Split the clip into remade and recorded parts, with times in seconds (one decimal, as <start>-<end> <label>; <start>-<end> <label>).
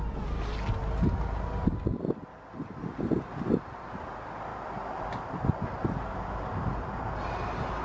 0.0-7.8 recorded